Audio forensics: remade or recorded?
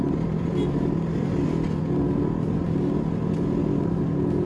recorded